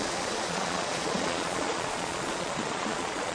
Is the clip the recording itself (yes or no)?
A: no